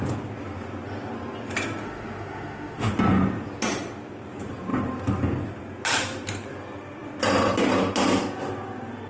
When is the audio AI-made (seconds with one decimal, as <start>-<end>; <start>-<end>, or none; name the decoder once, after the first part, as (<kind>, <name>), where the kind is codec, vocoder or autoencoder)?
1.8-2.9 (autoencoder, DAC-VAE)